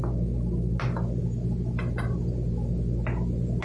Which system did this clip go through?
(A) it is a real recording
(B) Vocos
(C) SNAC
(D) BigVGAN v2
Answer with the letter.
A